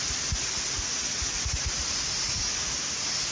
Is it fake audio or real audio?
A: real